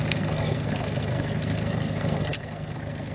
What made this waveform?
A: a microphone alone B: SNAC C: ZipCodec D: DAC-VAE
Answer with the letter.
B